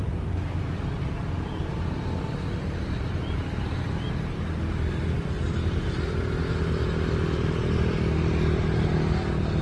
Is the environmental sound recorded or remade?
recorded